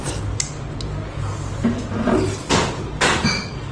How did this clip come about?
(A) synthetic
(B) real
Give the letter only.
B